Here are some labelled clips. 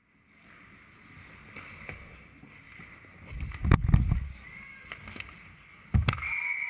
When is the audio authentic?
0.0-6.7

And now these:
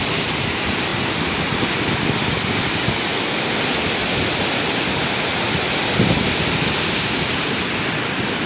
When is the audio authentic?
none